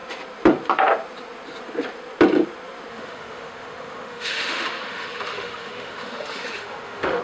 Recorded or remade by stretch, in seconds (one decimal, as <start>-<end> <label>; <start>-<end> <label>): 0.0-2.9 recorded; 2.9-7.2 remade